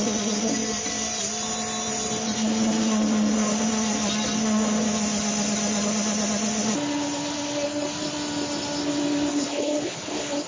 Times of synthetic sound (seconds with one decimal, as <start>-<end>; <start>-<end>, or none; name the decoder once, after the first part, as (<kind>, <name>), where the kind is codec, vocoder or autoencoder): 9.3-10.5 (codec, HILCodec)